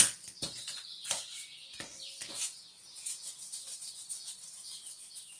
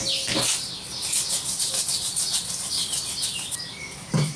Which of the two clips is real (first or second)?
second